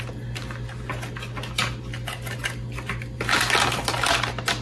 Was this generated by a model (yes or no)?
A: no